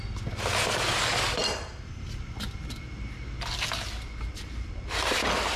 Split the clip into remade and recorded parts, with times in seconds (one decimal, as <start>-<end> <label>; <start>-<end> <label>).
0.0-5.6 recorded